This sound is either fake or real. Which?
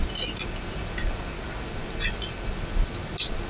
real